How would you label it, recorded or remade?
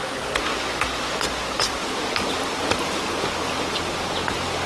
recorded